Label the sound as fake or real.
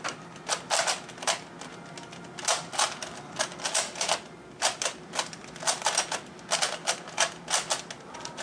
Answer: real